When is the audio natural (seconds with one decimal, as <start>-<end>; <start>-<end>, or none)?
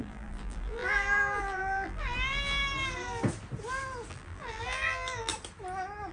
2.6-4.1; 5.3-6.1